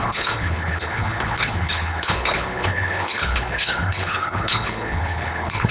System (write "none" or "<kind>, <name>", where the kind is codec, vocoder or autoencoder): codec, HILCodec